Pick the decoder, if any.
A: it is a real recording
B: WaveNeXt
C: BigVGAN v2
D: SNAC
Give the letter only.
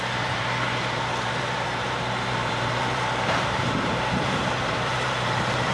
C